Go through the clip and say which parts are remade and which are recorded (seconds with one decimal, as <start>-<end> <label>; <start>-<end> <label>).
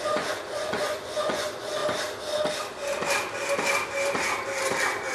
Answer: 0.0-1.8 remade; 1.8-5.1 recorded